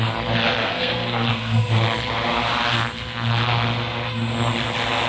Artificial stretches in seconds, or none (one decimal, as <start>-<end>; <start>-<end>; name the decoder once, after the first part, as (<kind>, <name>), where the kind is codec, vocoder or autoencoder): 0.6-1.7 (codec, SNAC)